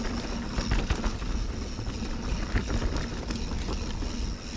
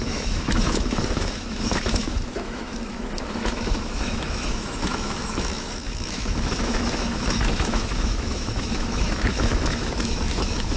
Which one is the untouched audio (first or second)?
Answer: first